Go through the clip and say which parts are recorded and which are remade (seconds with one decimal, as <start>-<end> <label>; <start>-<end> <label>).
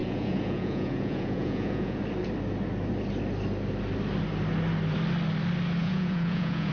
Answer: 0.0-2.0 remade; 2.0-5.8 recorded; 5.8-6.7 remade